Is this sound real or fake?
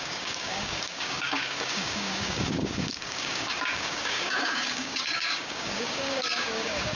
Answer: fake